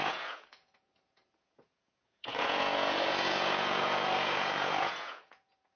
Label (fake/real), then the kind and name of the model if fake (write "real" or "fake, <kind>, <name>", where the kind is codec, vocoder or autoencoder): fake, vocoder, Vocos